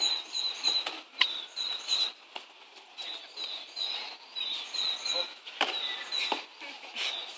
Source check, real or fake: real